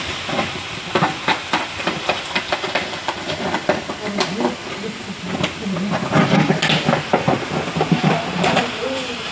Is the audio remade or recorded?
recorded